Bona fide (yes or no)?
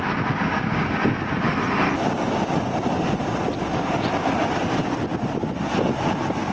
yes